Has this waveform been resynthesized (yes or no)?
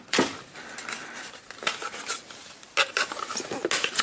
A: no